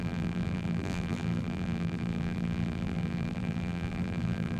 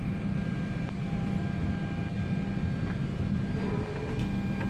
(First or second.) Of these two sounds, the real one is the second